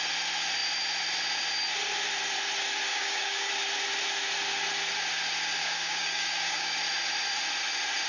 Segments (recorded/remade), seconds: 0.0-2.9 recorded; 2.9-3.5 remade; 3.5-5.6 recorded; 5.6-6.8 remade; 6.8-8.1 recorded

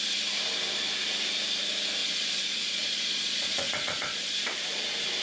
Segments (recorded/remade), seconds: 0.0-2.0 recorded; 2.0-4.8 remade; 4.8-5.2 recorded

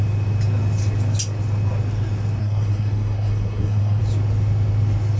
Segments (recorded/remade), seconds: 0.0-2.4 recorded; 2.4-4.0 remade; 4.0-5.2 recorded